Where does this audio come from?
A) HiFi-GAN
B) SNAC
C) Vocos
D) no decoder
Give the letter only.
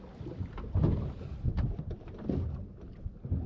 D